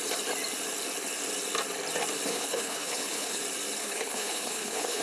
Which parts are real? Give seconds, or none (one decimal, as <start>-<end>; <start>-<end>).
0.0-2.3; 3.4-3.8

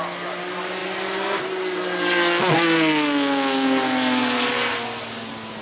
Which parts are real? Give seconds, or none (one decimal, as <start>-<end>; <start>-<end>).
0.0-5.6

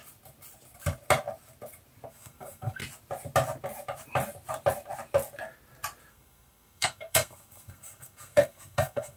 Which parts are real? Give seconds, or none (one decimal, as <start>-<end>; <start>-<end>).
0.0-2.1; 2.8-6.1

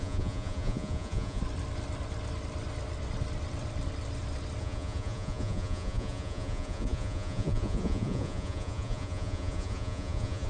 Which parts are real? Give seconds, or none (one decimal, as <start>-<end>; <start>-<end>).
1.4-4.6

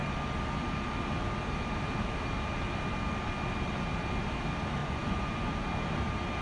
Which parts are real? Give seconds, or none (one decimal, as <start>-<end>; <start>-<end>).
0.0-4.8; 5.5-6.4